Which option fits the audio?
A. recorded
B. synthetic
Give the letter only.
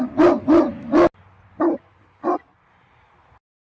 A